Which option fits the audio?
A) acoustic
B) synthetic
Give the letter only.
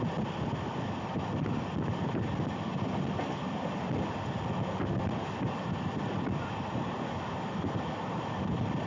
A